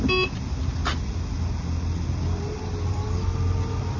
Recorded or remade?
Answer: recorded